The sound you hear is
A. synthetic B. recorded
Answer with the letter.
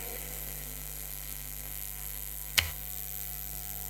A